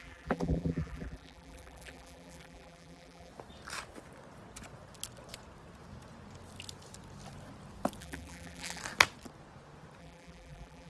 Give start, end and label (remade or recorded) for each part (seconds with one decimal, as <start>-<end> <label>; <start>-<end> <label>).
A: 0.0-3.3 remade; 3.3-8.0 recorded; 8.0-8.8 remade; 8.8-10.0 recorded; 10.0-10.9 remade

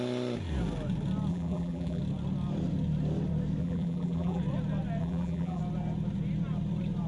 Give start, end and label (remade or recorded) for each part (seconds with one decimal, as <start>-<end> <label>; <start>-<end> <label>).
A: 0.0-1.3 recorded; 1.3-2.0 remade; 2.0-3.6 recorded; 3.6-4.4 remade; 4.4-5.0 recorded; 5.0-5.6 remade; 5.6-7.1 recorded

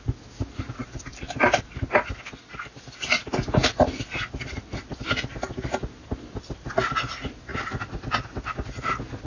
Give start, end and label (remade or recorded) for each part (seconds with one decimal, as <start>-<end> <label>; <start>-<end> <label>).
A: 0.0-0.8 recorded; 0.8-1.7 remade; 1.7-9.3 recorded